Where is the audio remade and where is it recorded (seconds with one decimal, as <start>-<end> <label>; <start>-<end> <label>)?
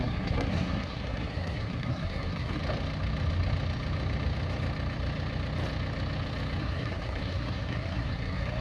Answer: 0.0-2.6 remade; 2.6-6.6 recorded; 6.6-8.6 remade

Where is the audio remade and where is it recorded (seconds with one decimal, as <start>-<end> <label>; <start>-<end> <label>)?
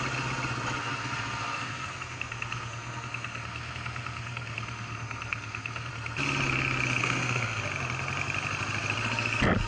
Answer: 0.0-0.8 recorded; 0.8-5.9 remade; 5.9-7.0 recorded; 7.0-7.6 remade; 7.6-9.7 recorded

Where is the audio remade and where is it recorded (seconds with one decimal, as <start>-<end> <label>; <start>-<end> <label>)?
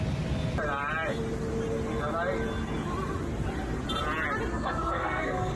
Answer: 0.0-4.5 recorded; 4.5-5.6 remade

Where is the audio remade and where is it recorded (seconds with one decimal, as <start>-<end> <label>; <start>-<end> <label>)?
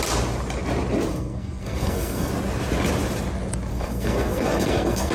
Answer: 0.0-1.1 recorded; 1.1-2.3 remade; 2.3-3.7 recorded; 3.7-5.1 remade